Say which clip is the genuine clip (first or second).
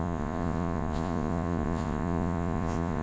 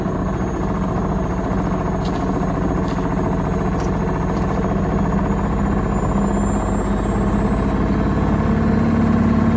second